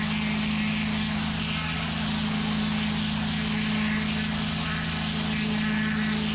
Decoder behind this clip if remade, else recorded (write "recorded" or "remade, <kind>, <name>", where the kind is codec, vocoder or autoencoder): recorded